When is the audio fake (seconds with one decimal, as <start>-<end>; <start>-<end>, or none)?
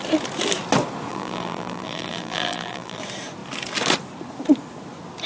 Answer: 1.1-3.0